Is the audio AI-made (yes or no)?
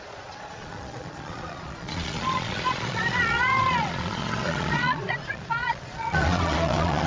yes